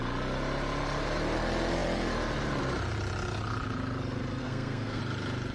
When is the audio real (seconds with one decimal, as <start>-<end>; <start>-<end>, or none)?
0.0-4.4; 5.0-5.5